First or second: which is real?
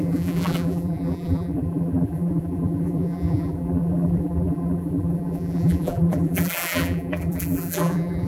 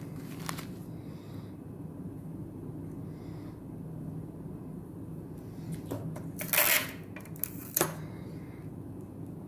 second